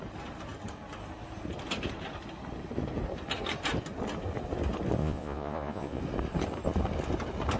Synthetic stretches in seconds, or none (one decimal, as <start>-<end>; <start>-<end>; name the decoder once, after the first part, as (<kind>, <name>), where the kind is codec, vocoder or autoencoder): 5.0-6.0 (vocoder, Vocos)